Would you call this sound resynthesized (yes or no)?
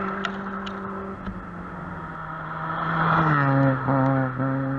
no